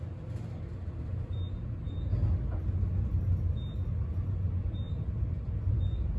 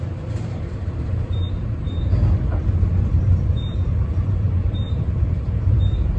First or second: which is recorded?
first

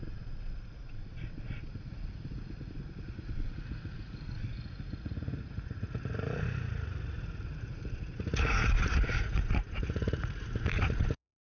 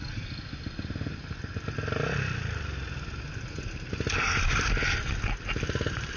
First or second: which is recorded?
second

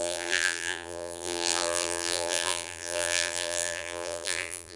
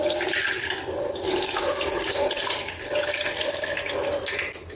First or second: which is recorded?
second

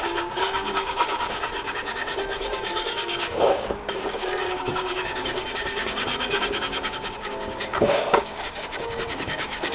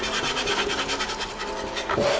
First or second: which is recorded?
second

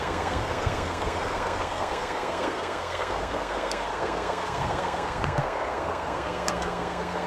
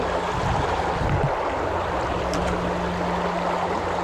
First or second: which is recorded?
second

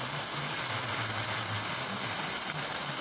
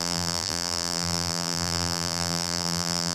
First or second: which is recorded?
first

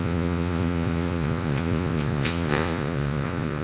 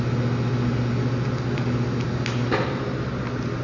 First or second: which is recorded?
second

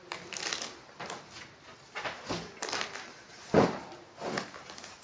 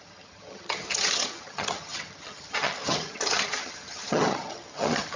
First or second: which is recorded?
first